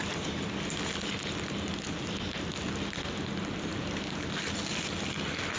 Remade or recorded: recorded